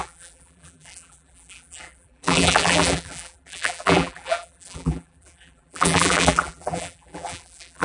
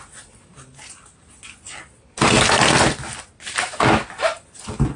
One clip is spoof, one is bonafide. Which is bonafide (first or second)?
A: second